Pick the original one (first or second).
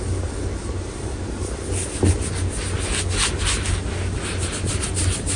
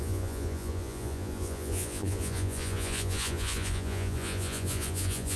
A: first